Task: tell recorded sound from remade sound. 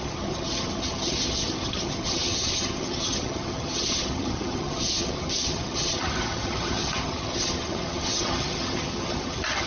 remade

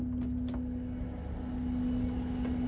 recorded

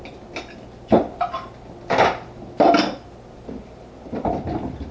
recorded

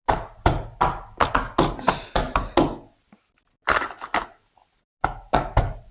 recorded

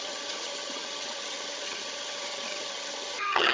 remade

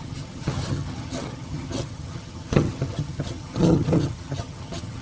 remade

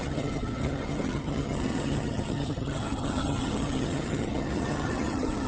remade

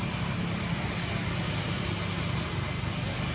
recorded